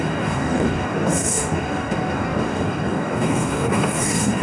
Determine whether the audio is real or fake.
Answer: fake